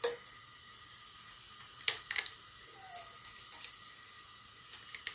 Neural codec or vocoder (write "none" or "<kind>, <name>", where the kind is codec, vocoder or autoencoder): none